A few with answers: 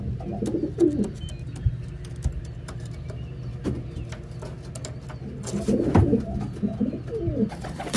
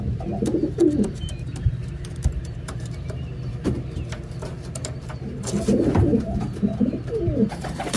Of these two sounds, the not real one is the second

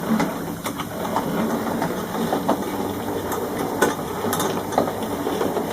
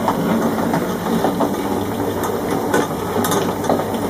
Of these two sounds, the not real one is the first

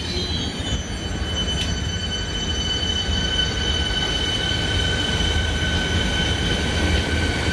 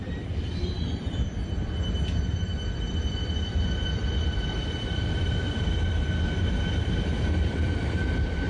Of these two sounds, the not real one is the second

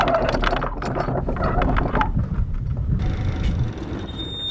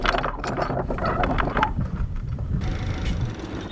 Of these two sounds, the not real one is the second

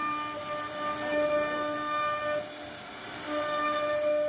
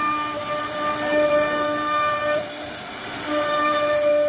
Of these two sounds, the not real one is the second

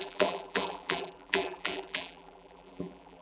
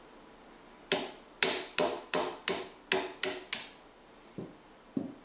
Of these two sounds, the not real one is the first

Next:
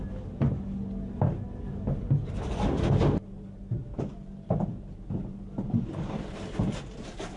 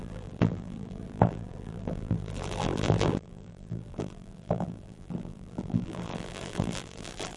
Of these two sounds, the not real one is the second